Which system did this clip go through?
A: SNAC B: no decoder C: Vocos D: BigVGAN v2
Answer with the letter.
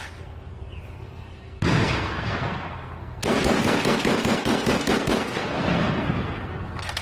A